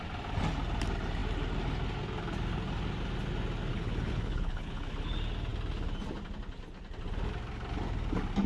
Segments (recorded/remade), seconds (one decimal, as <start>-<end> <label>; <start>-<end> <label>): 0.0-3.7 recorded; 3.7-5.1 remade; 5.1-8.5 recorded

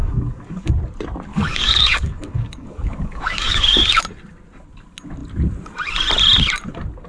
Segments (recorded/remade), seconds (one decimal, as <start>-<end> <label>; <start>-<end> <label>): 0.0-0.7 remade; 0.7-1.3 recorded; 1.3-4.0 remade; 4.0-7.1 recorded

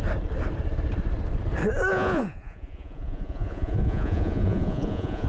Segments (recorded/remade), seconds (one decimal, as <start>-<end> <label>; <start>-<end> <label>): 0.0-1.9 recorded; 1.9-5.3 remade

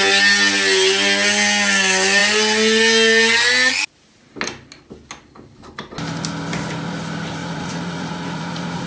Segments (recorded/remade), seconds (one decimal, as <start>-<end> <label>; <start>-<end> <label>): 0.0-7.4 recorded; 7.4-8.9 remade

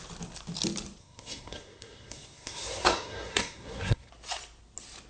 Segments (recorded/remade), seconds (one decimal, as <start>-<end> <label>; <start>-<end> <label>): 0.0-1.0 recorded; 1.0-4.1 remade; 4.1-5.1 recorded